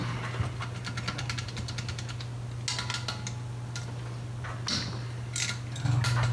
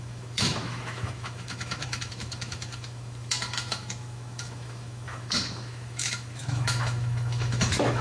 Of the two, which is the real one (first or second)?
first